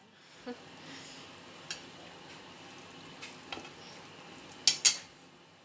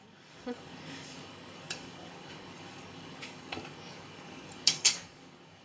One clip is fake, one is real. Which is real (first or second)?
first